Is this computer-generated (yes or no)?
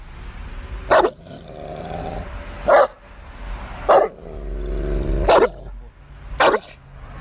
no